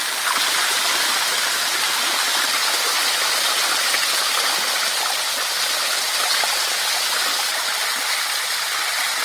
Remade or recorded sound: recorded